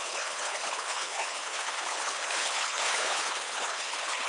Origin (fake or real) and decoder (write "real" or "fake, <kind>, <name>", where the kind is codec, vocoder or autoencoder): fake, codec, HILCodec